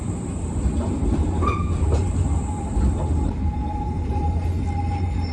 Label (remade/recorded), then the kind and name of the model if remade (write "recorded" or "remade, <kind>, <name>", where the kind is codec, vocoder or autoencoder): recorded